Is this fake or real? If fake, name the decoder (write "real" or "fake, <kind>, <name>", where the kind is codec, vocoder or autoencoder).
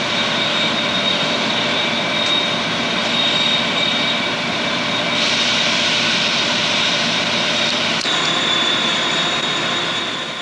fake, vocoder, BigVGAN v2